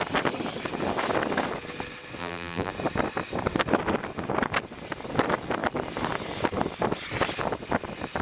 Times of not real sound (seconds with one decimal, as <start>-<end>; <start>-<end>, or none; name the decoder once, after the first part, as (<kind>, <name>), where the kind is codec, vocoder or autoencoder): 2.2-2.7 (vocoder, BigVGAN v2)